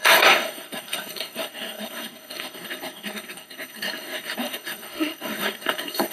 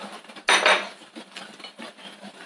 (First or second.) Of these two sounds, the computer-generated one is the first